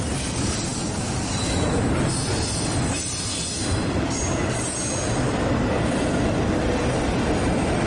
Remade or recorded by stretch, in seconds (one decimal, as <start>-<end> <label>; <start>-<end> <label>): 0.0-3.6 recorded; 3.6-4.3 remade; 4.3-7.9 recorded